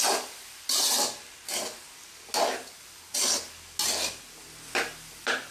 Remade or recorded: recorded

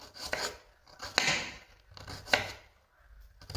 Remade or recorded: recorded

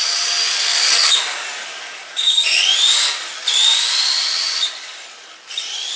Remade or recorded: recorded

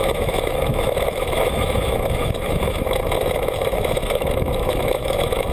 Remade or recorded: remade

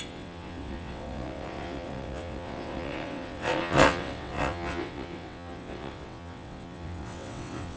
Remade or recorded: remade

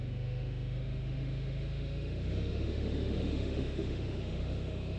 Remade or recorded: remade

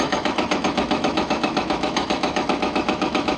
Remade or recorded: remade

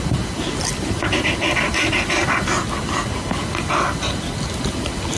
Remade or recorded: recorded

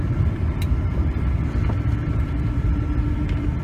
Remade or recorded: remade